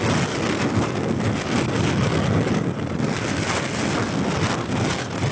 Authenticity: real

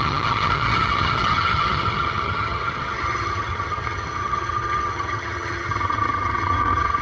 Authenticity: fake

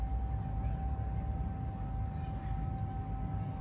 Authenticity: real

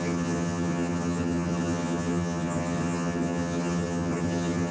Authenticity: fake